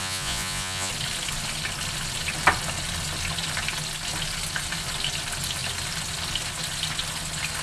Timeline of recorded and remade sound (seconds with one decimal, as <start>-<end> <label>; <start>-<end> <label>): 0.0-0.9 remade; 0.9-7.6 recorded